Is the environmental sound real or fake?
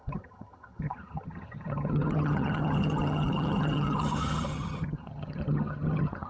fake